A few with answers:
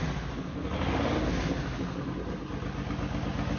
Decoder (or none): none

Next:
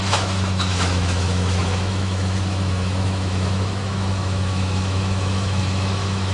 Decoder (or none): autoencoder, DAC-VAE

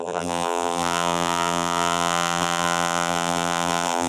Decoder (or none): vocoder, BigVGAN v2